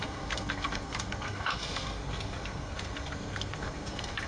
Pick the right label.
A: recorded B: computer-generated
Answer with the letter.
B